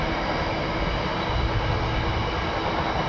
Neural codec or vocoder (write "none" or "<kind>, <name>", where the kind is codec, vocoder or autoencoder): none